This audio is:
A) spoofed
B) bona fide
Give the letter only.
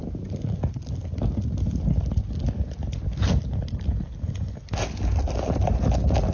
B